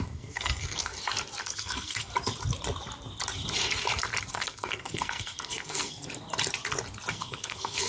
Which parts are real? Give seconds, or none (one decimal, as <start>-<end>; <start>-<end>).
0.9-1.4; 2.1-4.3; 6.1-7.1